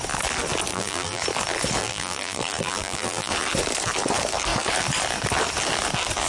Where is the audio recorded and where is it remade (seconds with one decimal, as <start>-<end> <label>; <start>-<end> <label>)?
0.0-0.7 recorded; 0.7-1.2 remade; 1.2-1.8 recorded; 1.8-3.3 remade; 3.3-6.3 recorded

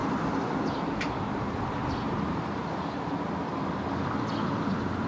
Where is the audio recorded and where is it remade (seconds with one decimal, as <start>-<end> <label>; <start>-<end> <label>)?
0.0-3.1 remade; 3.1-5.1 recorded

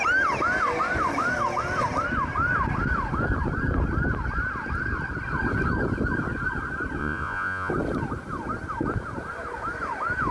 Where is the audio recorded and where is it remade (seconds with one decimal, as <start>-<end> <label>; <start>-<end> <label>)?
0.0-7.0 recorded; 7.0-7.7 remade; 7.7-10.3 recorded

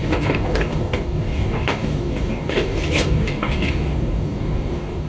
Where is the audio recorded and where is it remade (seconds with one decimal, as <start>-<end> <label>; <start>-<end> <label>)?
0.0-5.1 remade